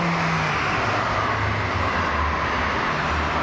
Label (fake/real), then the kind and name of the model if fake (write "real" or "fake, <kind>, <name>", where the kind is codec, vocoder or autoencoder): real